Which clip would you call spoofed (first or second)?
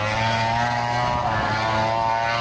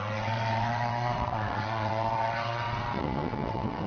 second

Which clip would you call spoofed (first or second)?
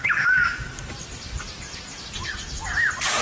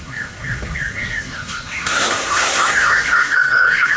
second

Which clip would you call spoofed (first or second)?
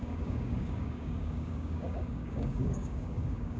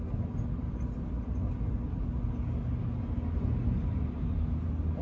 first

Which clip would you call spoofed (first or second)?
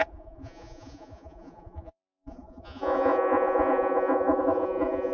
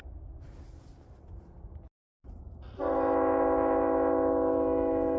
first